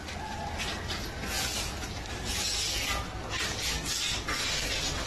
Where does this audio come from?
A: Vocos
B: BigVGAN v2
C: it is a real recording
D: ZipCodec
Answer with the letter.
C